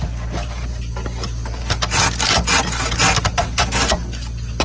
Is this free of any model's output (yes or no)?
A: yes